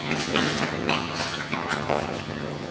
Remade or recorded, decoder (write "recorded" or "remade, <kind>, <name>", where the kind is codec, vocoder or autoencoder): remade, vocoder, HiFi-GAN